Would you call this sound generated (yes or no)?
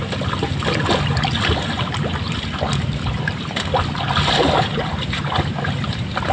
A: no